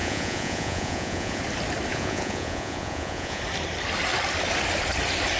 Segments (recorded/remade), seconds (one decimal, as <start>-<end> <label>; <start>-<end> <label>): 0.0-1.4 remade; 1.4-1.9 recorded; 1.9-3.4 remade; 3.4-5.4 recorded